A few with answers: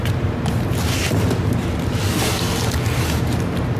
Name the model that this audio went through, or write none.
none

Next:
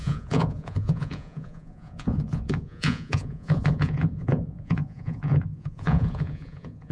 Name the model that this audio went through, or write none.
vocoder, Vocos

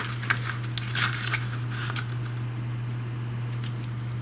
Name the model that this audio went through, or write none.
none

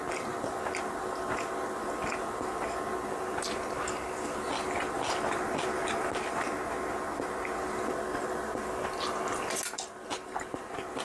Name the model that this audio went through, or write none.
none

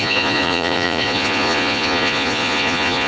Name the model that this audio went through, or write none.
vocoder, Vocos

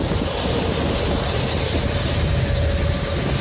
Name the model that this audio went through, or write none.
none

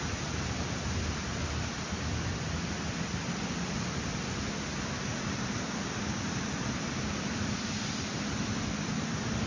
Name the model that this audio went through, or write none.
none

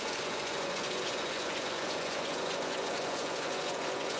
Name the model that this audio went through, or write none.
vocoder, Vocos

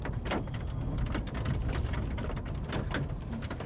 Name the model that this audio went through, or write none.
none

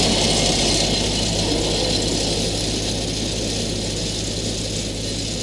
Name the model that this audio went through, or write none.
none